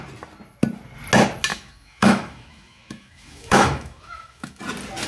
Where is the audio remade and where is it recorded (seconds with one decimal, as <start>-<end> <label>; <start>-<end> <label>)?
0.0-1.5 recorded; 1.5-4.6 remade; 4.6-5.1 recorded